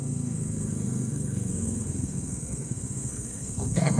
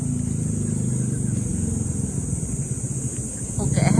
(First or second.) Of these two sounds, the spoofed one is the first